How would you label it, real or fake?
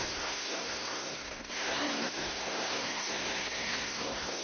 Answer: fake